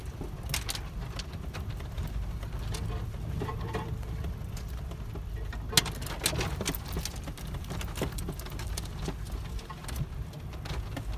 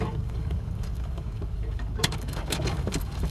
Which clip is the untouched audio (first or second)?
first